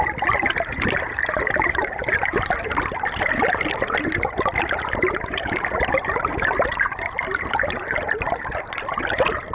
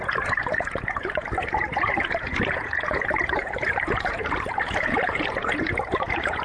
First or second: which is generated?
second